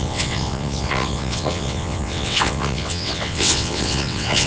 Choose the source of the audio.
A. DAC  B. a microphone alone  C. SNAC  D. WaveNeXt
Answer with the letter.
D